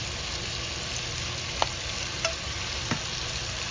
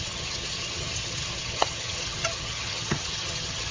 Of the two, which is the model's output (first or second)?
second